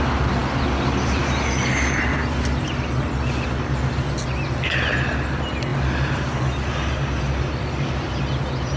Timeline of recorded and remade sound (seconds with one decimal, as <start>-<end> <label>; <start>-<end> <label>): 0.0-8.8 recorded